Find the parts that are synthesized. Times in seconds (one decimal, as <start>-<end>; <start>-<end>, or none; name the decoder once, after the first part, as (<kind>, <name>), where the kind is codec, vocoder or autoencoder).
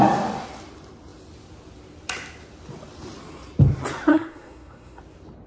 4.1-5.0 (codec, SNAC)